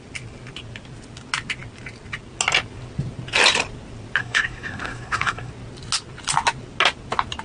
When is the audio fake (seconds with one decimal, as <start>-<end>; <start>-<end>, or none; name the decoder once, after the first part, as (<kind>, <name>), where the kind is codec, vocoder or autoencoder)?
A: 4.2-5.5 (codec, SNAC)